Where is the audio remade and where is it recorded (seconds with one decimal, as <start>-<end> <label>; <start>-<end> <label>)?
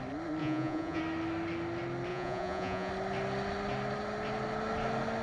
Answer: 0.0-0.4 recorded; 0.4-1.0 remade; 1.0-2.1 recorded; 2.1-2.9 remade; 2.9-5.2 recorded